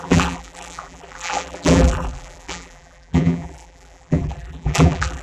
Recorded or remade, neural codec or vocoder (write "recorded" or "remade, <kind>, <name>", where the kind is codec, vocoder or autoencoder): remade, vocoder, BigVGAN v2